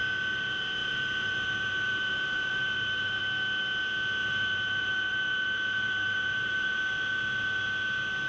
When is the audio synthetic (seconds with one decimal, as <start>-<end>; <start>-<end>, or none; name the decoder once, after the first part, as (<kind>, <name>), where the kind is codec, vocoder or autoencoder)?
0.8-3.2 (vocoder, BigVGAN v2); 4.2-6.8